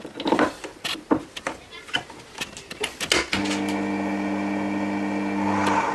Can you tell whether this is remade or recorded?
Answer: recorded